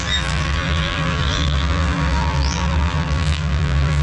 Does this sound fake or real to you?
fake